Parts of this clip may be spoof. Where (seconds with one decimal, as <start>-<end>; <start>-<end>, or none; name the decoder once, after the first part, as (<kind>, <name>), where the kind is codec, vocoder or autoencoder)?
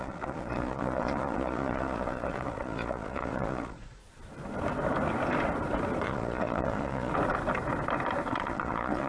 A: 0.0-4.0 (vocoder, Vocos); 6.0-7.1; 8.3-9.1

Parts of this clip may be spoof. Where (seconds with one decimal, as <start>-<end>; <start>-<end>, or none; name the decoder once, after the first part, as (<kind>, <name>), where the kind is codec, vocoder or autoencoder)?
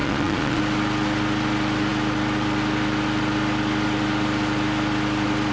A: 0.0-0.6 (vocoder, Vocos)